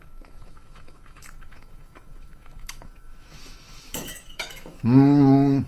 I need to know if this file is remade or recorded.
remade